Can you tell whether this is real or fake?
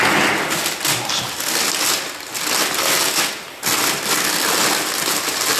real